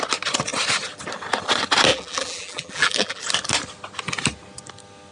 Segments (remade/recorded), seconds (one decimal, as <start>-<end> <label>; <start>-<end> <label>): 0.0-1.9 recorded; 1.9-3.2 remade; 3.2-5.1 recorded